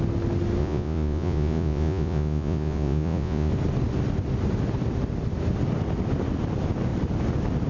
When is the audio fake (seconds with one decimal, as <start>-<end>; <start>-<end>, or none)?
0.6-3.5